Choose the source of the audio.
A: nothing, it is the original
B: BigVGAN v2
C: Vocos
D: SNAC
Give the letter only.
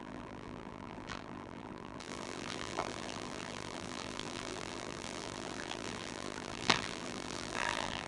B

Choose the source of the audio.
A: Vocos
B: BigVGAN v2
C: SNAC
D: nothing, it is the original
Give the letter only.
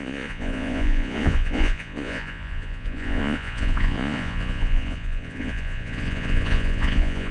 A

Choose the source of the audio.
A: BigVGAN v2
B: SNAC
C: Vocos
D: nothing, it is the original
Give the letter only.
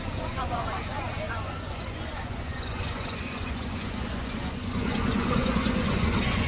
C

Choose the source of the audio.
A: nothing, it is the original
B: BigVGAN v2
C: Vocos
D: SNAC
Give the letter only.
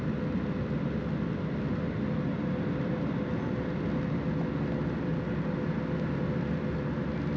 A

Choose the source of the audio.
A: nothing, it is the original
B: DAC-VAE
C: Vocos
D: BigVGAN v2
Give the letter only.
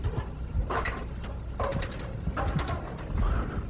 A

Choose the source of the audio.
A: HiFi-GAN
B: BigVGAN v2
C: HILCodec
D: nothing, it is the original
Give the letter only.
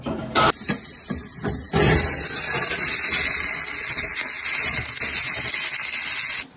D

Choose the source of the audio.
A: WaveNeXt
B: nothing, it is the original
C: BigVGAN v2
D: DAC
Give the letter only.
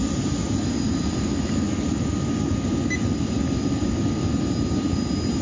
B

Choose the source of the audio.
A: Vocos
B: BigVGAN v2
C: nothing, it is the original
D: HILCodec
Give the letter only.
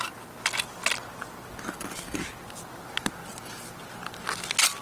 C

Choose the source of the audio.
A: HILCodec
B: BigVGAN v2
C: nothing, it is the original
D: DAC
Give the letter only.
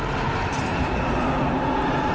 C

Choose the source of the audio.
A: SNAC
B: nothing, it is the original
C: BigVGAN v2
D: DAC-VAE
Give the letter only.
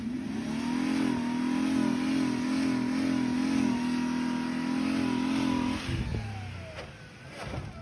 B